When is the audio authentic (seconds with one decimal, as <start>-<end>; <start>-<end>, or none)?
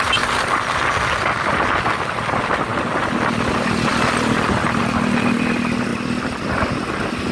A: 0.0-2.7; 4.8-5.9; 6.5-7.3